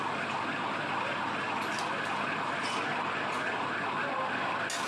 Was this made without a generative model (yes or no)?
yes